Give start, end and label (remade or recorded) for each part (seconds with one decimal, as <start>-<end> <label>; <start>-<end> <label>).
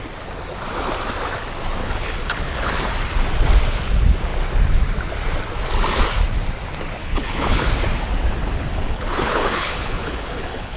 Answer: 0.0-1.8 recorded; 1.8-2.7 remade; 2.7-7.0 recorded; 7.0-7.7 remade; 7.7-8.7 recorded; 8.7-10.8 remade